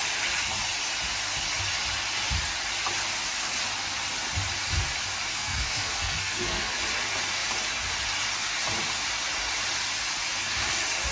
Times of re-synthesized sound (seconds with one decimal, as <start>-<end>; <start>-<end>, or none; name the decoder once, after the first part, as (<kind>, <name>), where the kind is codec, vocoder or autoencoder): 5.3-6.8 (codec, SNAC)